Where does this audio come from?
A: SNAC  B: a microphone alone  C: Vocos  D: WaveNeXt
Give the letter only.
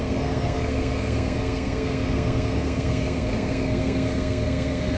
A